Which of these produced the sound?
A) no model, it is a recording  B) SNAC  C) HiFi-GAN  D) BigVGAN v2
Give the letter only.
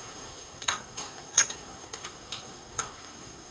B